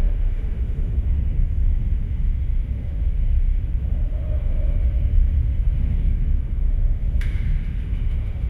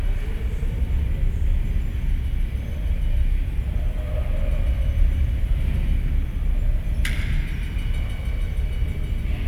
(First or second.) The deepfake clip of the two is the first